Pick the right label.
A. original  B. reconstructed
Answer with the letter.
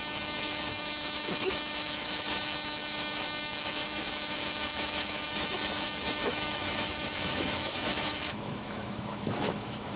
B